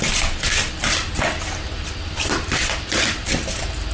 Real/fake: fake